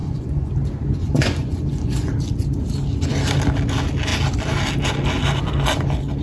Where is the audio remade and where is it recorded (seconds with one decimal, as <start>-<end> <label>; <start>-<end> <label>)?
0.0-0.5 remade; 0.5-1.0 recorded; 1.0-2.1 remade; 2.1-6.2 recorded

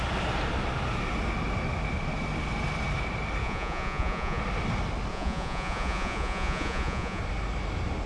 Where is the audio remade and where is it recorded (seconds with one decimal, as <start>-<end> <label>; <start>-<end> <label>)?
0.0-3.4 recorded; 3.4-4.4 remade; 4.4-5.1 recorded; 5.1-7.2 remade; 7.2-8.1 recorded

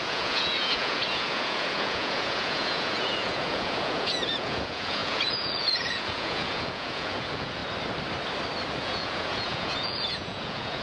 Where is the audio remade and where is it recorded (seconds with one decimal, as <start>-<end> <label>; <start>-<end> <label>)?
0.0-7.6 remade; 7.6-8.8 recorded; 8.8-10.8 remade

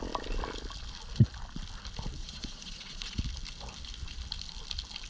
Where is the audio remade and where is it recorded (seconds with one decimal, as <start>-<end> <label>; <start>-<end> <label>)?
0.0-2.2 recorded; 2.2-3.2 remade; 3.2-5.1 recorded

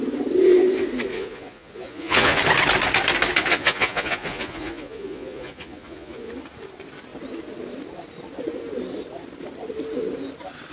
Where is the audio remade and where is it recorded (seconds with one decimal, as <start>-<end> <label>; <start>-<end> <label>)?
0.0-1.1 recorded; 1.1-2.4 remade; 2.4-3.5 recorded; 3.5-6.3 remade; 6.3-10.7 recorded

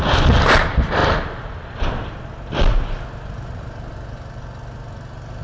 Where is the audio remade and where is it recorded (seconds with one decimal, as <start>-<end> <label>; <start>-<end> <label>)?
0.0-5.4 recorded